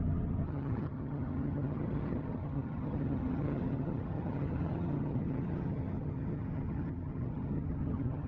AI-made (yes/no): yes